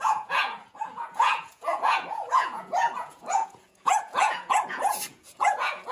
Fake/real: fake